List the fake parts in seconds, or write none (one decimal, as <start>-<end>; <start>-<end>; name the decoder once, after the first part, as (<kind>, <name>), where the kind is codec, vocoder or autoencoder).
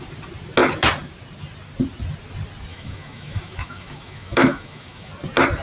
2.7-5.1 (autoencoder, DAC-VAE)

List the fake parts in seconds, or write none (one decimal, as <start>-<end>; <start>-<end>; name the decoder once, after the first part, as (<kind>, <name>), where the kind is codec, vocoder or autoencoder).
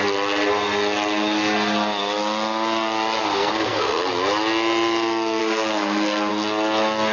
3.2-4.1 (codec, SNAC); 5.4-6.3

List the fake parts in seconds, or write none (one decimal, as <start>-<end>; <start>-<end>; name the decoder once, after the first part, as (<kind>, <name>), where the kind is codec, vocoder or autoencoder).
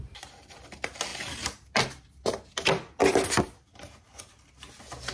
none